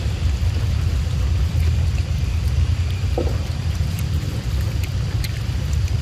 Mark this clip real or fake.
fake